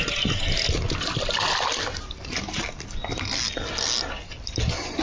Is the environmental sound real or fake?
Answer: real